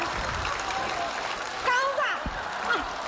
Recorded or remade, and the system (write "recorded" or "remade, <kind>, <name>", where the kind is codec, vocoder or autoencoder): remade, vocoder, BigVGAN v2